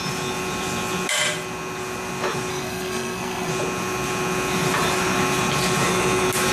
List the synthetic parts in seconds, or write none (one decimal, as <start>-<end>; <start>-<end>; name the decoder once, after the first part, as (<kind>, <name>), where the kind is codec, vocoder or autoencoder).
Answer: 2.5-3.5 (codec, SNAC)